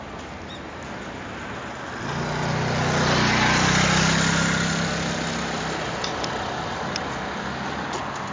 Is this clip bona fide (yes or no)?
yes